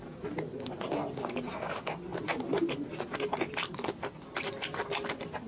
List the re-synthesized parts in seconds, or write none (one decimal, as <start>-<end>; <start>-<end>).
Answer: none